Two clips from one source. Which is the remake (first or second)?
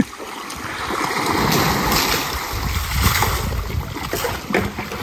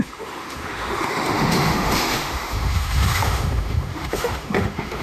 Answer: second